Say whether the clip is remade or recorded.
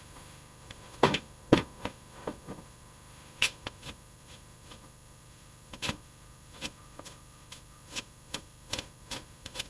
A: remade